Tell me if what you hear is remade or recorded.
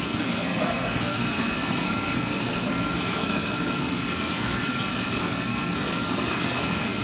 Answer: remade